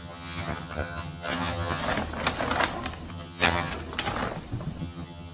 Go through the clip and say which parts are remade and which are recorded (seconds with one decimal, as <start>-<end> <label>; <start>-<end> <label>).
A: 0.0-1.8 remade; 1.8-3.1 recorded; 3.1-3.7 remade; 3.7-4.8 recorded; 4.8-5.3 remade